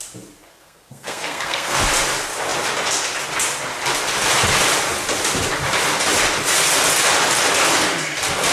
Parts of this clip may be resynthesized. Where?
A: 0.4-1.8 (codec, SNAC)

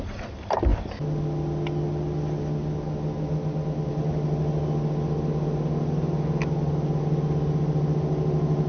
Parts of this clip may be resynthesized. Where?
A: none